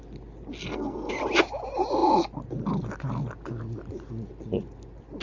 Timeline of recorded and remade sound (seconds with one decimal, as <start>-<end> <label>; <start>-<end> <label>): 0.0-0.6 recorded; 0.6-1.1 remade; 1.1-5.2 recorded